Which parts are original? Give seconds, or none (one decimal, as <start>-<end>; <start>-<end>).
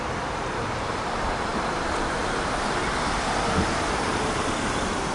none